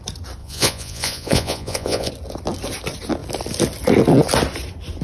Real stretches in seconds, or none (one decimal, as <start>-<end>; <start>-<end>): 0.0-0.4; 2.1-5.0